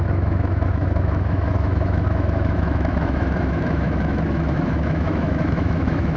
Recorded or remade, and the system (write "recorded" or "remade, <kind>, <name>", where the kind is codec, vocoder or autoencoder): remade, autoencoder, DAC-VAE